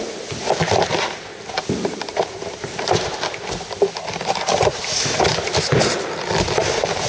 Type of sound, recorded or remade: recorded